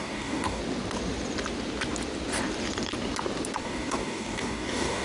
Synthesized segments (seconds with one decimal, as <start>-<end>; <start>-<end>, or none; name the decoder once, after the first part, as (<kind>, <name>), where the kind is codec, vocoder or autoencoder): 0.0-0.6 (codec, DAC); 3.6-5.0